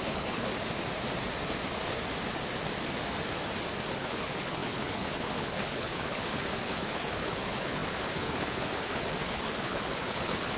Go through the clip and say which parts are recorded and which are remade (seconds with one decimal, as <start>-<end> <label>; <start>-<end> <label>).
0.0-0.5 remade; 0.5-3.9 recorded; 3.9-10.6 remade